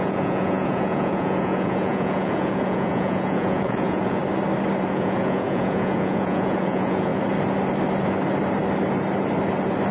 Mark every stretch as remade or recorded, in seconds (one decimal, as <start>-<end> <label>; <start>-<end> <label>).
0.0-4.2 remade; 4.2-4.8 recorded; 4.8-7.1 remade; 7.1-9.9 recorded